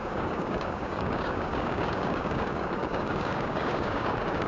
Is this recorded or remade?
remade